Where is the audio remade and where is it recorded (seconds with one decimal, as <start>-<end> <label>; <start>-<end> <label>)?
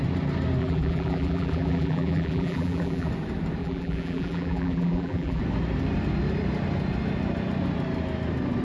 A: 0.0-0.6 recorded; 0.6-3.1 remade; 3.1-3.6 recorded; 3.6-5.4 remade; 5.4-8.6 recorded